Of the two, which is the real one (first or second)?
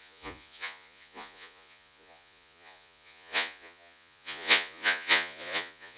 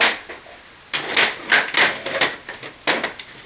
second